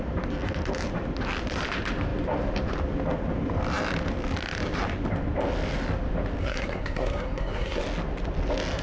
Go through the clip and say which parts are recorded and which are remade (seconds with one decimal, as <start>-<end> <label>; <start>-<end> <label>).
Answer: 0.0-6.4 recorded; 6.4-7.8 remade; 7.8-8.8 recorded